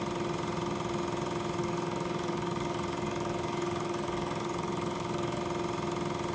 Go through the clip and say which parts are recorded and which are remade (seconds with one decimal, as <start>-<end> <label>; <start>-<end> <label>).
0.0-1.6 recorded; 1.6-5.4 remade; 5.4-6.3 recorded